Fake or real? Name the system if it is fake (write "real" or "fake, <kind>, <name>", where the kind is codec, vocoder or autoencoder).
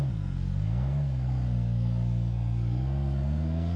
fake, codec, SNAC